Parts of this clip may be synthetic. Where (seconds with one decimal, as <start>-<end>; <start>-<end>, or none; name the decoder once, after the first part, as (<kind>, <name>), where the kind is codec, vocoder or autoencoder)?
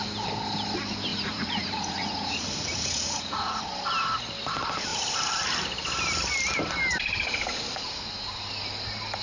1.1-3.7 (vocoder, Vocos)